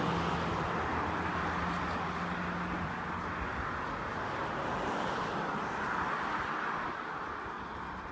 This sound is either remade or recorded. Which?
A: recorded